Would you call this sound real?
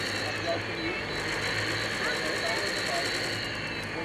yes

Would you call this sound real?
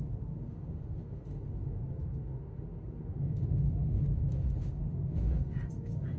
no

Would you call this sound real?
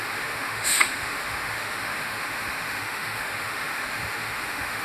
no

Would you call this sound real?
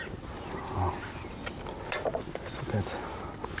yes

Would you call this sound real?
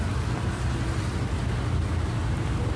yes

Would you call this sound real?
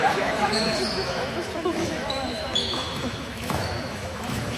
no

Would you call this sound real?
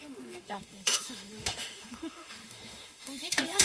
no